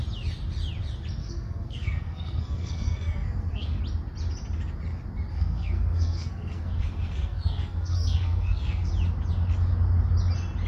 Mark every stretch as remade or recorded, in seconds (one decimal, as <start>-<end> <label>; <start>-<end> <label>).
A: 0.0-1.2 recorded; 1.2-3.8 remade; 3.8-5.3 recorded; 5.3-8.9 remade; 8.9-10.7 recorded